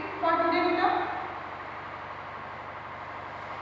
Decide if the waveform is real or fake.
real